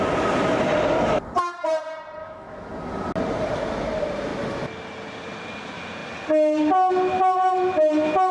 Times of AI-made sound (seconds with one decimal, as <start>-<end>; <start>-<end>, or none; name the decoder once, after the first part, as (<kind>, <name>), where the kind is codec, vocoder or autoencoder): 2.2-2.7 (autoencoder, DAC-VAE)

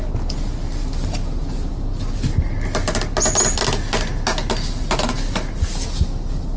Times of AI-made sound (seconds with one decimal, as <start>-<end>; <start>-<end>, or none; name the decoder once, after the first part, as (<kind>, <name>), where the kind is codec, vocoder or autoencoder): none

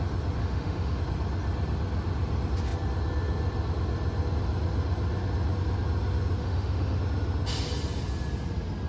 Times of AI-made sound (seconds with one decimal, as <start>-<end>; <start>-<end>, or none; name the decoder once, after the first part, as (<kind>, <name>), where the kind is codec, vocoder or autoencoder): 0.4-1.0 (autoencoder, DAC-VAE); 6.4-7.0

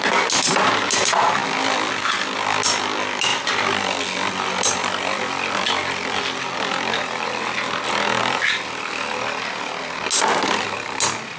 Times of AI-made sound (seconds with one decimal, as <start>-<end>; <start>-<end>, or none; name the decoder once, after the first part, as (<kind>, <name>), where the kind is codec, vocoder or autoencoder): none

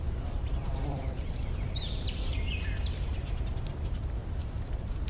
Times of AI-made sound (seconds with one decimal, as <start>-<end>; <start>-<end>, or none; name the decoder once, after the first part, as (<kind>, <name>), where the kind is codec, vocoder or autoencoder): 0.0-3.1 (vocoder, BigVGAN v2); 4.2-5.1